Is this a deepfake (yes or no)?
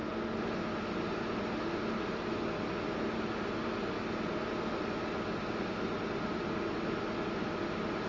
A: no